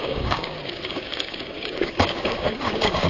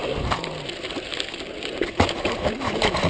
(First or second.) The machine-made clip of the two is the first